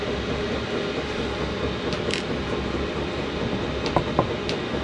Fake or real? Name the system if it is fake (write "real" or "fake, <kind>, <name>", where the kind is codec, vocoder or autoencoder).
real